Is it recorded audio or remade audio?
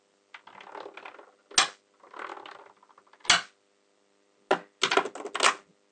recorded